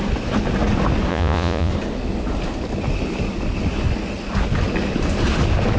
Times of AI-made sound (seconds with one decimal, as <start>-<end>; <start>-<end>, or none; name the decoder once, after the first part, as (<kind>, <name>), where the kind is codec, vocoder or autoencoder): 1.1-1.7 (vocoder, Vocos)